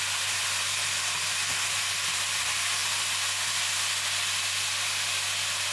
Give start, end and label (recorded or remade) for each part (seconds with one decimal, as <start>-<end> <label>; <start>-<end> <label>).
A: 0.0-5.7 recorded